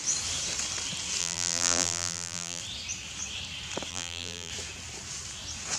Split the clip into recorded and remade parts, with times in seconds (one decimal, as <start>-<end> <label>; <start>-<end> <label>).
0.0-1.2 recorded; 1.2-2.6 remade; 2.6-3.9 recorded; 3.9-4.5 remade; 4.5-5.8 recorded